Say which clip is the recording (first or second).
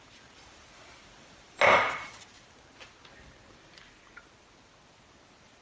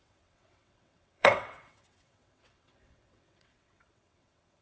first